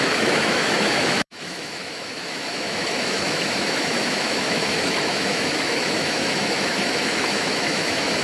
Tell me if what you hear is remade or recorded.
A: remade